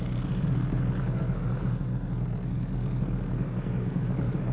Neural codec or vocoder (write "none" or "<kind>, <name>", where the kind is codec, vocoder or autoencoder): codec, SNAC